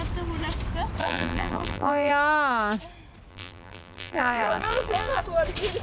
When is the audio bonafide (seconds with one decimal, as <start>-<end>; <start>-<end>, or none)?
0.0-1.0; 2.1-3.3; 5.2-5.8